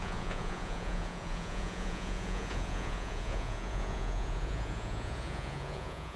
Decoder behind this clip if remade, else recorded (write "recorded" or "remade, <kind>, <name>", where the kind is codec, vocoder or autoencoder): remade, vocoder, Vocos